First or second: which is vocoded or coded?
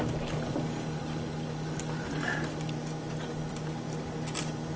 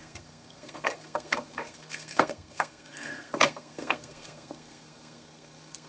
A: second